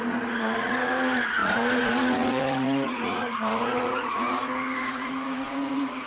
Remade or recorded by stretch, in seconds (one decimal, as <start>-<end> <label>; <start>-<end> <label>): 0.0-6.1 remade